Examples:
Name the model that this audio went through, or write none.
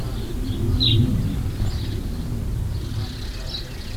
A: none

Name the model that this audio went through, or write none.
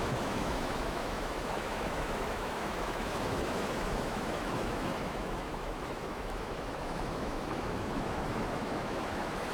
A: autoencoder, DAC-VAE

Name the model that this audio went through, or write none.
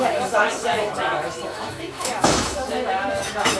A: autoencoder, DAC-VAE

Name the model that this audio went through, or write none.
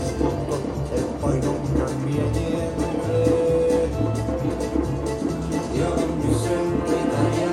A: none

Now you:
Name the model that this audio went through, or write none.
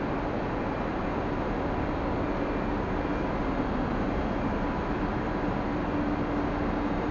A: none